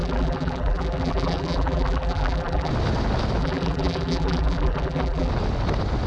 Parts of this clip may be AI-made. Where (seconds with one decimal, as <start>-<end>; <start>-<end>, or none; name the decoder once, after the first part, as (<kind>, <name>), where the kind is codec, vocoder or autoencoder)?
0.0-2.7 (vocoder, BigVGAN v2); 3.4-5.3